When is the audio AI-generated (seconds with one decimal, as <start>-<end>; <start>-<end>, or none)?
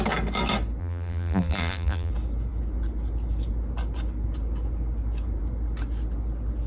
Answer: 0.8-2.1